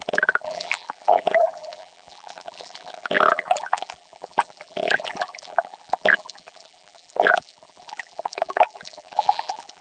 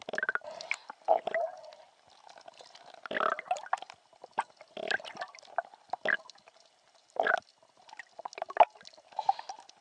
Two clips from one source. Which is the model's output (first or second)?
first